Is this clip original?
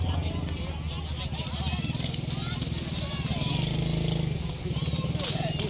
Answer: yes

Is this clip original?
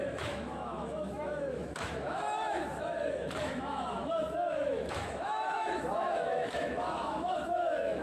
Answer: no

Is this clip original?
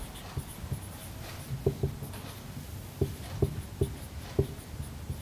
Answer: yes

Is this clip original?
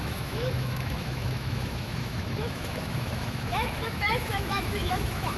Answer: no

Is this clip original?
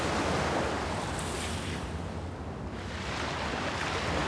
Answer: yes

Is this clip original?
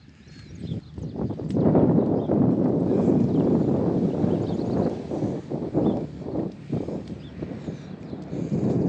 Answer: yes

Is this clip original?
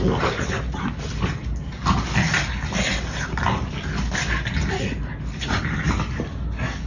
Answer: yes